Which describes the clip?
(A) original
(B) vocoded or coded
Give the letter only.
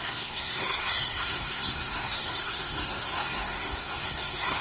B